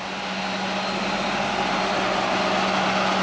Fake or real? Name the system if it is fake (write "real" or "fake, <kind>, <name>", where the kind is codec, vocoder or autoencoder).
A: real